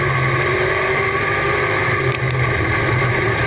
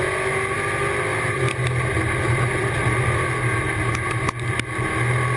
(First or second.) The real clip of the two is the second